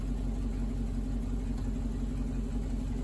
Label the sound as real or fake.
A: real